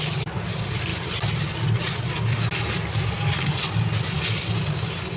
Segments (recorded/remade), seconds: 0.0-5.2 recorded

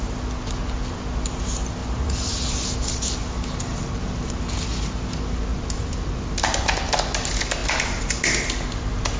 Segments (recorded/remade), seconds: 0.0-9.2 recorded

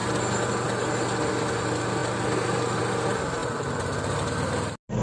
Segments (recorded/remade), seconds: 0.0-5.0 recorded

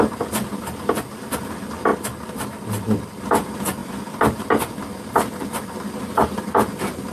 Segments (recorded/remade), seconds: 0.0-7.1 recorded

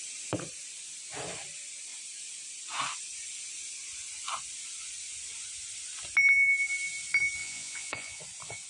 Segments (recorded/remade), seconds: 0.0-7.4 recorded; 7.4-8.2 remade; 8.2-8.7 recorded

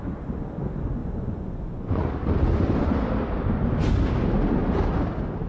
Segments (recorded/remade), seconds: 0.0-1.0 recorded; 1.0-2.0 remade; 2.0-5.5 recorded

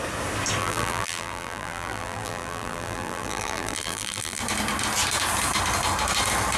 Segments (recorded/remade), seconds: 0.0-0.6 recorded; 0.6-4.4 remade; 4.4-6.6 recorded

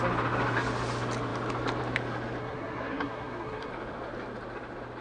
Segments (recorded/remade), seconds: 0.0-2.4 recorded; 2.4-3.7 remade; 3.7-5.0 recorded